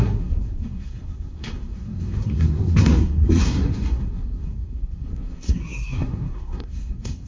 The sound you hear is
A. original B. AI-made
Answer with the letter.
B